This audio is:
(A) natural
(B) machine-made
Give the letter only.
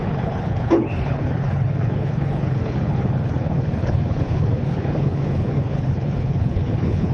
B